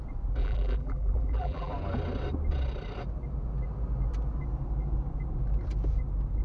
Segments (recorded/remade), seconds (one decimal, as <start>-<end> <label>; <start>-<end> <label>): 0.0-0.4 recorded; 0.4-1.7 remade; 1.7-6.4 recorded